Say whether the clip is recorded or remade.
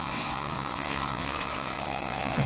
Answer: remade